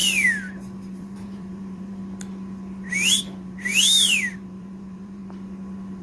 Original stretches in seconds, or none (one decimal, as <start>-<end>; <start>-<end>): 0.0-0.9; 2.0-2.9; 5.2-6.0

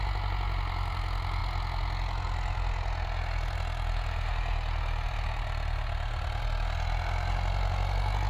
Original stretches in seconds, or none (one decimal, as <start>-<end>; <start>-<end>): 0.0-8.3

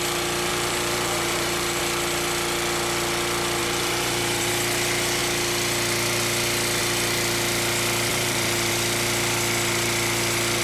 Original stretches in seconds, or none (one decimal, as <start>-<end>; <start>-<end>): 0.0-0.5; 1.8-3.6; 4.5-8.1; 8.7-10.6

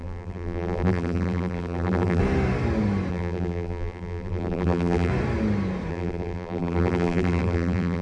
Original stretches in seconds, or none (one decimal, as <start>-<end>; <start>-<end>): 2.2-3.1; 5.1-5.9